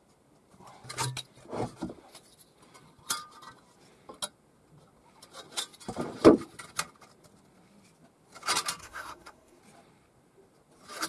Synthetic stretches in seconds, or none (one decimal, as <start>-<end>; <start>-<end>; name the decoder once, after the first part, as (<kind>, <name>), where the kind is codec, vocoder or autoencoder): 8.8-9.6 (codec, SNAC)